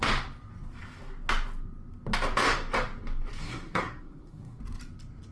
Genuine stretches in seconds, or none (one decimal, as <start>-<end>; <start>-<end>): 0.0-3.4; 4.6-5.3